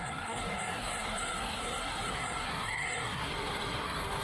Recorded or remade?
remade